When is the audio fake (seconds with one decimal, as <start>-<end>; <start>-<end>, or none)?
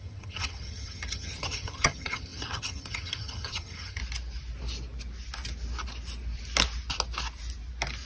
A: 0.0-4.0